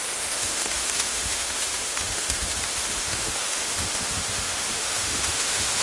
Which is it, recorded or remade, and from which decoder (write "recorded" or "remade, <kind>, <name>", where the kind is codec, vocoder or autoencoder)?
remade, autoencoder, DAC-VAE